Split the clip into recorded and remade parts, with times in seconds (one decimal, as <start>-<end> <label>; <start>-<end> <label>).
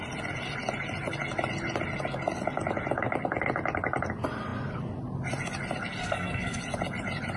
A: 0.0-6.0 recorded; 6.0-6.6 remade; 6.6-7.4 recorded